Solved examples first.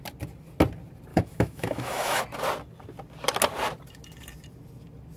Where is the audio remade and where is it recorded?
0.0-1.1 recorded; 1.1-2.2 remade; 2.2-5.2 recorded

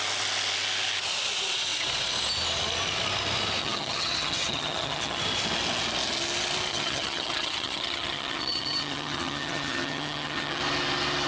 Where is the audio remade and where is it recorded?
0.0-3.6 recorded; 3.6-5.2 remade; 5.2-6.7 recorded; 6.7-10.6 remade; 10.6-11.3 recorded

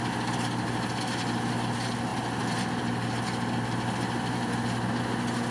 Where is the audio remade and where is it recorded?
0.0-5.5 recorded

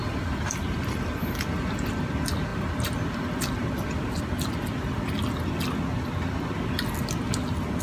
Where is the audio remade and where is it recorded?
0.0-1.9 remade; 1.9-2.5 recorded; 2.5-4.2 remade; 4.2-7.8 recorded

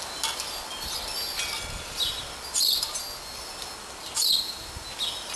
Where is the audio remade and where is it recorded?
0.0-5.4 recorded

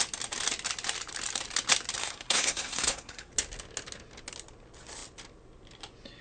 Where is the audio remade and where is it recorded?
0.0-2.0 recorded; 2.0-3.3 remade; 3.3-6.2 recorded

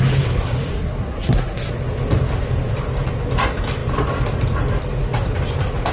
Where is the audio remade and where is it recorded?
0.0-0.7 recorded; 0.7-1.7 remade; 1.7-5.9 recorded